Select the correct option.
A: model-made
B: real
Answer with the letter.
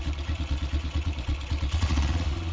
A